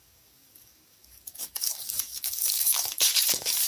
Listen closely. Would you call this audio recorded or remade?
remade